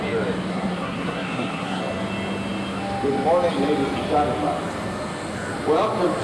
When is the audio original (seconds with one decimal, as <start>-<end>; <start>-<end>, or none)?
0.0-0.5; 1.8-6.2